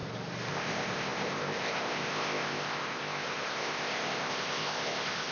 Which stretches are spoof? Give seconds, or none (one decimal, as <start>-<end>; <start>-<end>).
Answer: 0.5-5.3